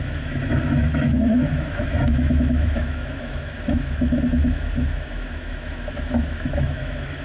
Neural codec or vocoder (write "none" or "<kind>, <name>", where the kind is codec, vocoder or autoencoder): autoencoder, DAC-VAE